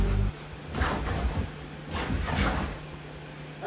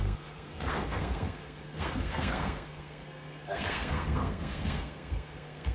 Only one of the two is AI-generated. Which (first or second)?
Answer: second